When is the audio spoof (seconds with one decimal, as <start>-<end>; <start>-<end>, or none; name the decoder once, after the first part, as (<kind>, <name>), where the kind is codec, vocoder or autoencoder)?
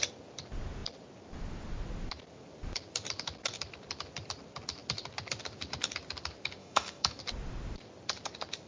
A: 6.6-7.2 (autoencoder, DAC-VAE)